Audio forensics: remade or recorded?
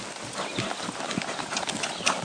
recorded